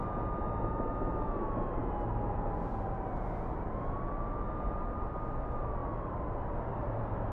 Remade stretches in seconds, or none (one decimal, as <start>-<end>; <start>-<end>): none